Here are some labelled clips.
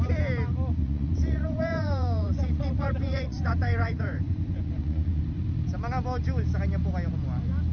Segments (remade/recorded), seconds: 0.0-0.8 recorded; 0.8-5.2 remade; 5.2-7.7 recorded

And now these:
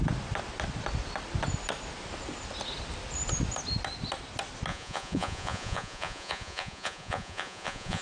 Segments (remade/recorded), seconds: 0.0-4.7 recorded; 4.7-8.0 remade

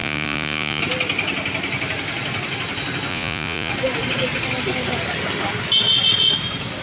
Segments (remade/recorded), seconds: 0.0-0.8 remade; 0.8-3.1 recorded; 3.1-3.7 remade; 3.7-6.8 recorded

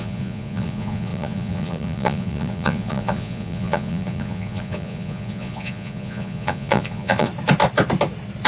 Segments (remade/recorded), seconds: 0.0-7.3 remade; 7.3-8.5 recorded

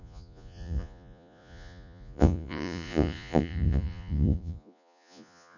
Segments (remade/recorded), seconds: 0.0-5.6 remade

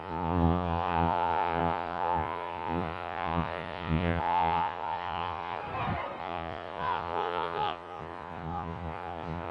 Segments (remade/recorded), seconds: 0.0-5.6 remade; 5.6-6.2 recorded; 6.2-9.5 remade

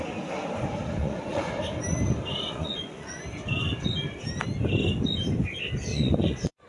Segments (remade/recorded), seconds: 0.0-1.0 recorded; 1.0-1.5 remade; 1.5-2.3 recorded; 2.3-3.2 remade; 3.2-5.9 recorded; 5.9-6.7 remade